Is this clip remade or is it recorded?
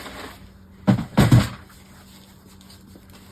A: recorded